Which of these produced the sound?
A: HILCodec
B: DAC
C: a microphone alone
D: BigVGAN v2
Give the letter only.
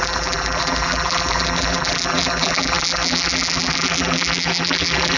D